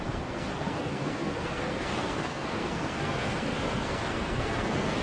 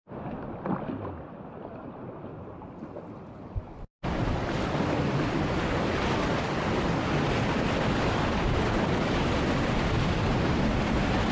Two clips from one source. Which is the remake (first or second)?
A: first